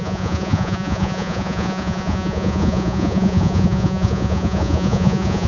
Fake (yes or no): yes